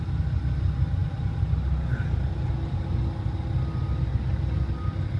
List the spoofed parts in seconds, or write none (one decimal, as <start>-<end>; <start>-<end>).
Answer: none

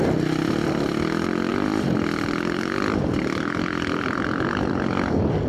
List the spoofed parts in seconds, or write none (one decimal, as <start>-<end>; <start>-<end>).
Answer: none

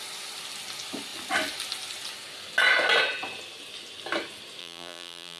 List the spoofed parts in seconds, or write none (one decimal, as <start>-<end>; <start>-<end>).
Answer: 4.6-5.4

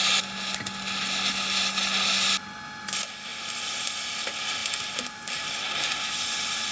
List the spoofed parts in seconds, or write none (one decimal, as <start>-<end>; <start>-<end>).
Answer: 3.3-3.9; 4.6-6.7

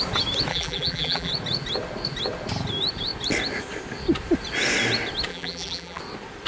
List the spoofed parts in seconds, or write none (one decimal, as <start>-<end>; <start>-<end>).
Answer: 0.5-1.3; 5.3-6.0

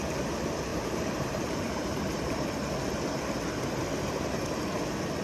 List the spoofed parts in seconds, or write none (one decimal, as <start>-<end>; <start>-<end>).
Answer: 0.7-2.5

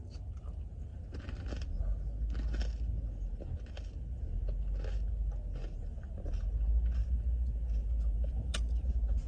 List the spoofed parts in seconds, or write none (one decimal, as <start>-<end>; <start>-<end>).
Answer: 7.0-8.9